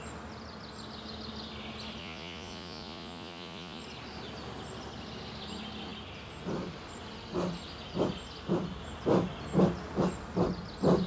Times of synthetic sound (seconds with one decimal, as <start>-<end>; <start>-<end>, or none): 2.0-3.8